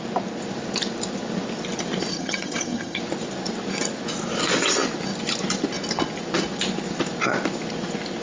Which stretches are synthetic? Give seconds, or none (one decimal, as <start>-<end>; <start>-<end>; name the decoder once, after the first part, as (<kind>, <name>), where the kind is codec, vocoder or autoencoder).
2.1-3.0 (vocoder, HiFi-GAN)